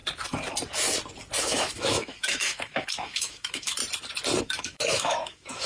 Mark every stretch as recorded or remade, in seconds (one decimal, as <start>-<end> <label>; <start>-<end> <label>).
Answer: 0.0-1.4 recorded; 1.4-3.8 remade; 3.8-4.4 recorded; 4.4-5.7 remade